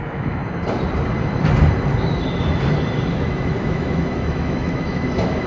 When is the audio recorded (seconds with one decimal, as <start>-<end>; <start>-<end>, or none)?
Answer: 0.4-3.1